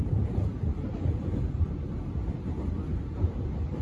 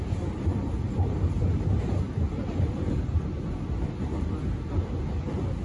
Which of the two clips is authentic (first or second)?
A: second